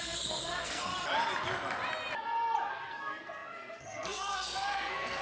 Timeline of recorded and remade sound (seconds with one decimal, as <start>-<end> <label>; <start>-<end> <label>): 0.0-0.9 remade; 0.9-2.7 recorded; 2.7-5.2 remade